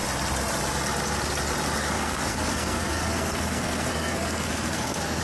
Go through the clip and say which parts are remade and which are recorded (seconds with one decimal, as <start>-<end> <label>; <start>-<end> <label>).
0.0-1.8 recorded; 1.8-5.2 remade